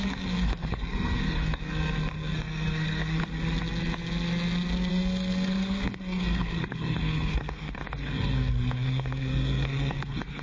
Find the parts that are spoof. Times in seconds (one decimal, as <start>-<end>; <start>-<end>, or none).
0.0-3.2; 4.9-10.4